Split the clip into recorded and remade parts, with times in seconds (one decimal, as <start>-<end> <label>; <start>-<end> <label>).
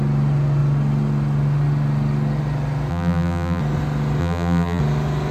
0.0-2.9 recorded; 2.9-3.6 remade; 3.6-4.2 recorded; 4.2-4.8 remade; 4.8-5.3 recorded